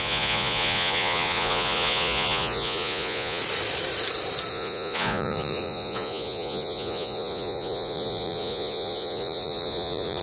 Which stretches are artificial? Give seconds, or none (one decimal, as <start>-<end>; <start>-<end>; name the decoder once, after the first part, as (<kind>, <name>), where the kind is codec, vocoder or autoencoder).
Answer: 0.0-3.4 (vocoder, Vocos); 4.5-10.2